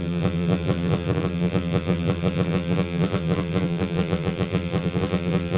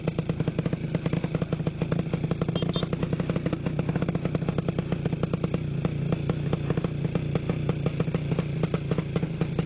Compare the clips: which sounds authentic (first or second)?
second